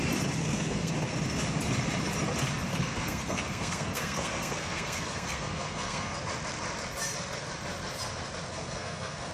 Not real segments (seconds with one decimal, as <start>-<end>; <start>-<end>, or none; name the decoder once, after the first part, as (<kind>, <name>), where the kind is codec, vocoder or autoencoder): 0.4-0.9 (codec, SNAC); 2.7-6.2; 8.5-9.3